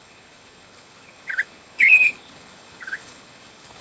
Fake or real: fake